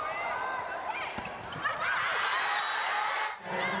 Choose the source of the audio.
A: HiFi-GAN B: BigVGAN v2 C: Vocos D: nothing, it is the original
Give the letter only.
D